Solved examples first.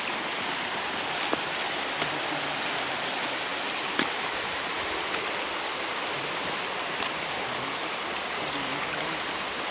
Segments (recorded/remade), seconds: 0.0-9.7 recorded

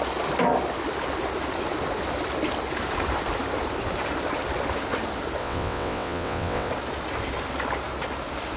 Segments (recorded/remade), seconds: 0.0-5.4 recorded; 5.4-6.7 remade; 6.7-8.6 recorded

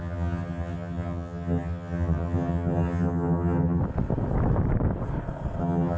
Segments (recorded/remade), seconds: 0.0-3.8 remade; 3.8-5.6 recorded; 5.6-6.0 remade

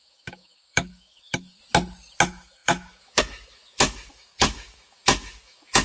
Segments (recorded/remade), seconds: 0.0-1.6 remade; 1.6-2.2 recorded; 2.2-5.8 remade

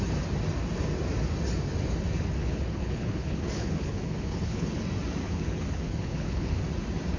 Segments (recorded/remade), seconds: 0.0-2.4 recorded; 2.4-4.7 remade; 4.7-5.2 recorded; 5.2-6.6 remade; 6.6-7.2 recorded

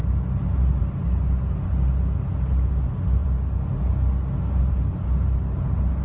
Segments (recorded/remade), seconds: 0.0-3.2 recorded; 3.2-3.8 remade; 3.8-6.0 recorded